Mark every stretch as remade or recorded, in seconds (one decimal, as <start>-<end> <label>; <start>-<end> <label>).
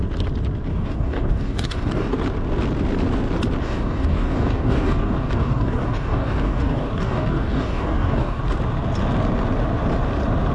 0.0-0.7 recorded; 0.7-2.1 remade; 2.1-3.6 recorded; 3.6-8.4 remade; 8.4-10.5 recorded